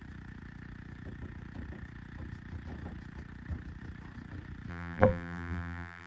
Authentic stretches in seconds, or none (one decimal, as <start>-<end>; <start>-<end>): 0.0-4.7

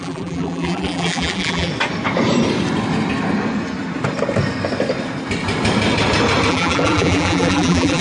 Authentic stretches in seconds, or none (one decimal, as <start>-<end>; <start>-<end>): 1.7-6.5